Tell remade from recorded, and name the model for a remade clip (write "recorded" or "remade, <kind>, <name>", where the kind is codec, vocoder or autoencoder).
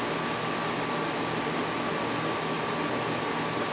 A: recorded